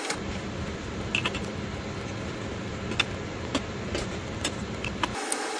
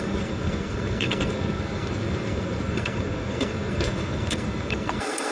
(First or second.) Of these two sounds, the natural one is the first